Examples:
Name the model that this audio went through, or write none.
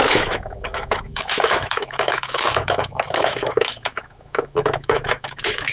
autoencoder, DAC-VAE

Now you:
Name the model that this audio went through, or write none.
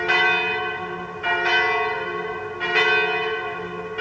none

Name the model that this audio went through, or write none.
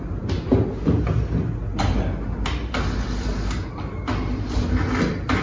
none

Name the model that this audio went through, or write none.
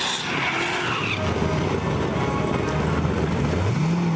none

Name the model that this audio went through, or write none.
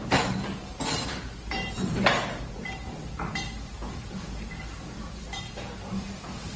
none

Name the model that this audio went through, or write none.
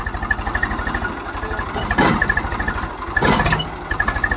none